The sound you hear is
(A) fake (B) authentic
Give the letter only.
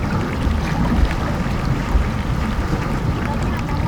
B